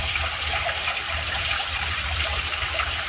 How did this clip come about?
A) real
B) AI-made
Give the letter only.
B